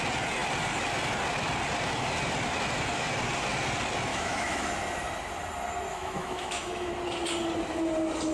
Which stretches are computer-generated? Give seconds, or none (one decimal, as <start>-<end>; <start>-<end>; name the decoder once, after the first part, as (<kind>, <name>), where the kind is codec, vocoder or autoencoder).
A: 4.1-4.7 (autoencoder, DAC-VAE); 5.9-6.9